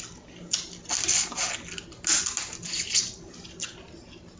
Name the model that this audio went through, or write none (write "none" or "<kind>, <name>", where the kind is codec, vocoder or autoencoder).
none